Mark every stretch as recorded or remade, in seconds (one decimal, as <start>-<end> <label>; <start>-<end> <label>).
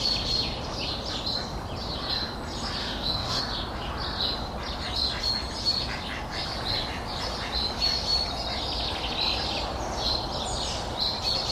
0.0-2.8 recorded; 2.8-3.4 remade; 3.4-11.5 recorded